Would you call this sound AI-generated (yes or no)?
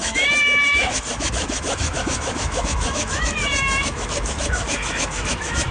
yes